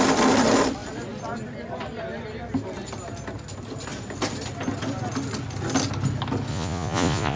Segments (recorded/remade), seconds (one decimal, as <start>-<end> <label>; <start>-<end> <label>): 0.0-6.5 recorded; 6.5-7.4 remade